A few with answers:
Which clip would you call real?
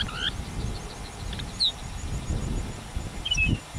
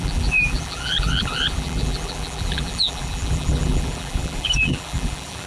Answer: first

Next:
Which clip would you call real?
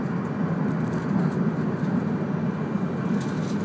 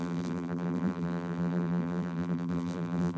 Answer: first